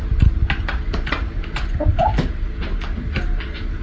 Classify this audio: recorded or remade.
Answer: recorded